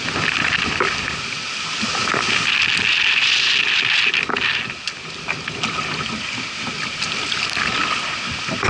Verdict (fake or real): real